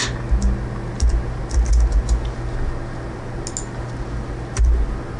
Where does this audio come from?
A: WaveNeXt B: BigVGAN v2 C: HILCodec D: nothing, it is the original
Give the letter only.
D